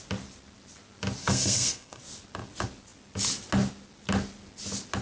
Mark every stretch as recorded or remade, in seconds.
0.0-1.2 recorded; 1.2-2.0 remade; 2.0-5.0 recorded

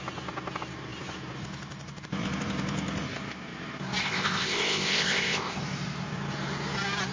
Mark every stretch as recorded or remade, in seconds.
0.0-4.0 recorded; 4.0-5.6 remade; 5.6-7.1 recorded